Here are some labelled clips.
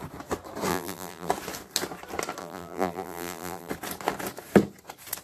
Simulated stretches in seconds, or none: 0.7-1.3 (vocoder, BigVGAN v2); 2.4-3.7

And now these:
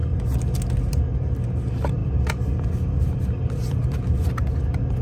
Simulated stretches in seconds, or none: none